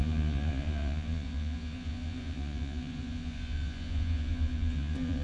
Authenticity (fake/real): fake